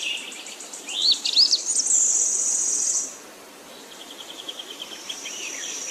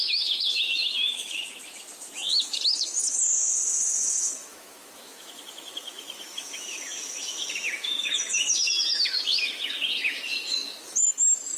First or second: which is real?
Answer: first